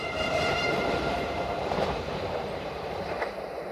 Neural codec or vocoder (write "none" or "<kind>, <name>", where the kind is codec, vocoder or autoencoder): vocoder, BigVGAN v2